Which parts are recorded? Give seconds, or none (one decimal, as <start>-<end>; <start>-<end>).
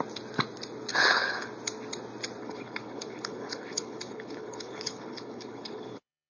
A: 0.0-0.9; 1.5-2.4